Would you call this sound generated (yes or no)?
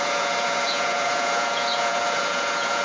yes